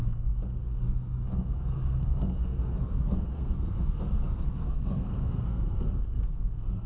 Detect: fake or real fake